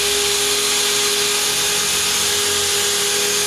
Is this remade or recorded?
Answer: recorded